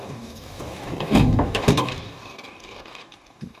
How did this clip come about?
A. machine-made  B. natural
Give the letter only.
A